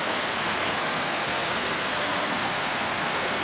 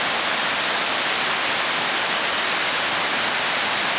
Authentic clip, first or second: second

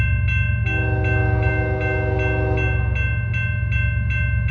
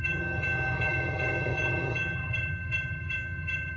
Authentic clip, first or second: first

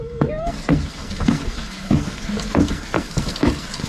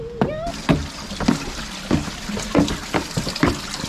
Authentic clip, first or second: second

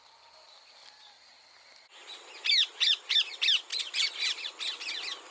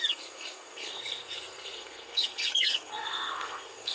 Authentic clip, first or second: first